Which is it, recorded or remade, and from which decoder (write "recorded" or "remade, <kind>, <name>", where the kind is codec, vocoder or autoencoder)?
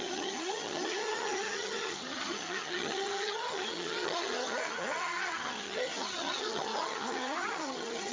remade, vocoder, HiFi-GAN